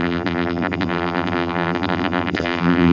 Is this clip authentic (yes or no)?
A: no